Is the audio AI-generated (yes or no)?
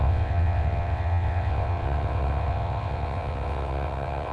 yes